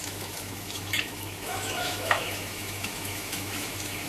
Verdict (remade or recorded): remade